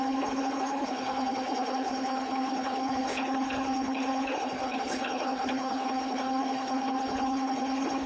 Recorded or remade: remade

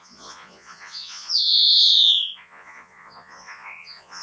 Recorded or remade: remade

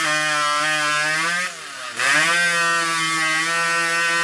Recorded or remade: recorded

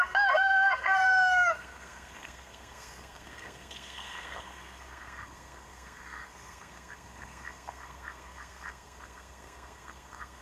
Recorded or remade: remade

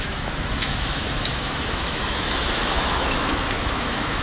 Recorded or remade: remade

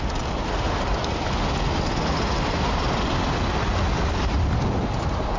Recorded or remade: recorded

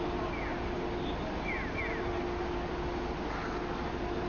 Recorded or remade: recorded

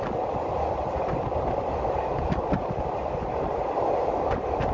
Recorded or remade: recorded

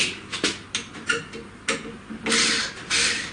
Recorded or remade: recorded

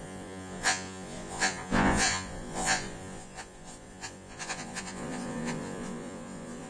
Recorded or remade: remade